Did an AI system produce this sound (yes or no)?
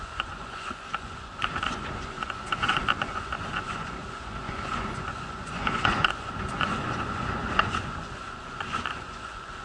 yes